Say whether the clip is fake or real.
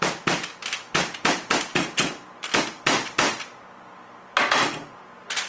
real